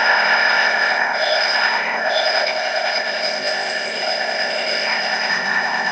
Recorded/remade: remade